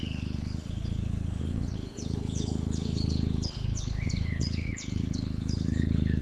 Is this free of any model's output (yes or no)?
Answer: no